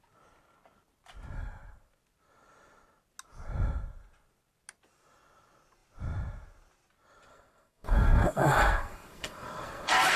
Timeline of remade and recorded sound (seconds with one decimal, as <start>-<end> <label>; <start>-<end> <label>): 0.0-7.3 recorded; 7.3-10.2 remade